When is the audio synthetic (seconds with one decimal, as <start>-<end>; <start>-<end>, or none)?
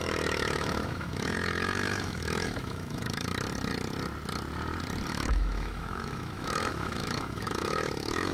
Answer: 0.0-3.3; 5.1-8.3